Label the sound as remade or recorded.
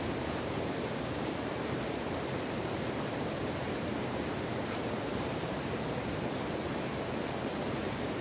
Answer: remade